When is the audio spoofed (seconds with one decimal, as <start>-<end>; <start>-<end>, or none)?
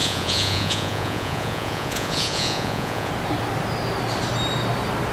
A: 0.0-3.1